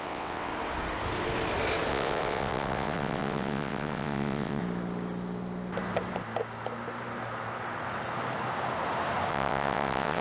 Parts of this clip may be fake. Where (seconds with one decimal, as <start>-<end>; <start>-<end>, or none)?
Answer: 0.0-0.5; 1.9-4.6; 9.3-10.2